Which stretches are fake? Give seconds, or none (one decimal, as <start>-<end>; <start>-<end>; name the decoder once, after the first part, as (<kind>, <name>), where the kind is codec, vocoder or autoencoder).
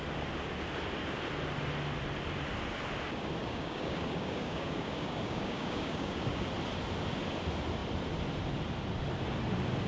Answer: 3.4-6.5 (codec, DAC)